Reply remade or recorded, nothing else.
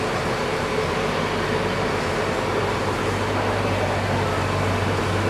recorded